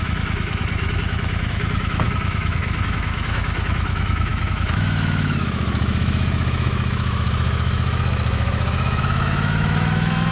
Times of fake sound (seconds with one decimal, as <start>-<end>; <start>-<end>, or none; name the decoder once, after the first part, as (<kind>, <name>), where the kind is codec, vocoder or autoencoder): 0.0-10.3 (autoencoder, DAC-VAE)